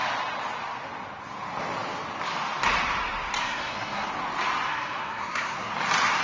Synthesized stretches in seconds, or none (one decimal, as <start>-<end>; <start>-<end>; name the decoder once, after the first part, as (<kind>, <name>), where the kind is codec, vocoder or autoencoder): 3.4-4.1 (codec, SNAC); 4.7-5.7